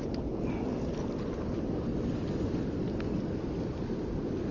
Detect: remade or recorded recorded